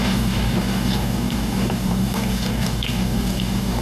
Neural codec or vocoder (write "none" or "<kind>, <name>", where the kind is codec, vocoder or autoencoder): codec, DAC